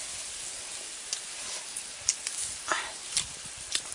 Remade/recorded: recorded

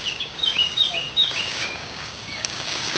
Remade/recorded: remade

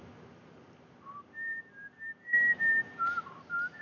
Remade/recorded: recorded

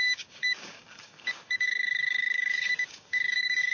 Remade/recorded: remade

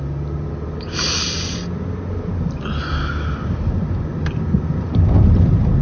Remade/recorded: recorded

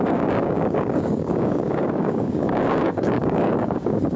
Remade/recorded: remade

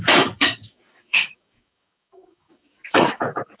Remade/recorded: remade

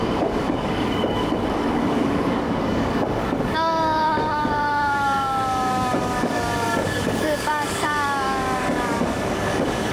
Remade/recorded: remade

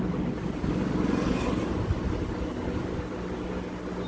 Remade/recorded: recorded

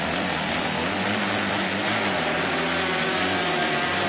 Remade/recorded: recorded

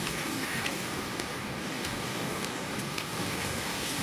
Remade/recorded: remade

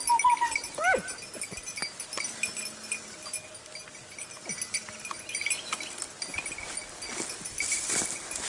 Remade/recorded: recorded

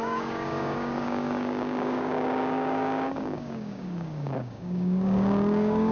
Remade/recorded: remade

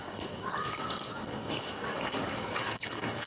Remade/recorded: remade